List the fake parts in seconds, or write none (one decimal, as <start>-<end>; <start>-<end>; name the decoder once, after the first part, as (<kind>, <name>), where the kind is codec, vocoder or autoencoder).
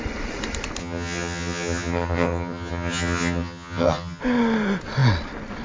0.8-4.2 (vocoder, HiFi-GAN)